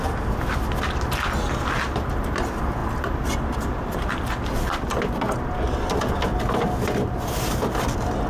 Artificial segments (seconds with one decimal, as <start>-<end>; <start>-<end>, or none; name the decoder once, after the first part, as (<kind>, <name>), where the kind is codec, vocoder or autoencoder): none